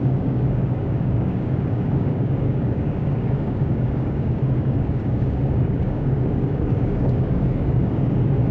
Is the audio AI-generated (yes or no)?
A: yes